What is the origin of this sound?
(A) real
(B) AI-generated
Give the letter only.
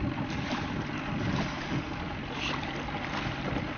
A